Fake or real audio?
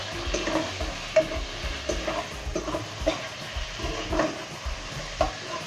real